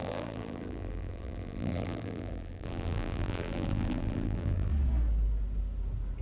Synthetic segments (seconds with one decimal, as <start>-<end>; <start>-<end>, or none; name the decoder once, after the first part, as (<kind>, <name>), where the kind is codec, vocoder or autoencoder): 0.0-4.7 (vocoder, BigVGAN v2)